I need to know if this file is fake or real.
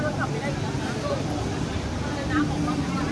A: real